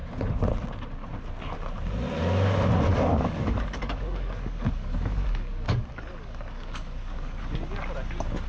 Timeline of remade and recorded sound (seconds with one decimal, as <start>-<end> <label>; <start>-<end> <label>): 0.0-2.9 recorded; 2.9-7.4 remade; 7.4-8.5 recorded